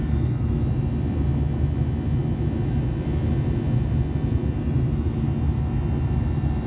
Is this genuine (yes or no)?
yes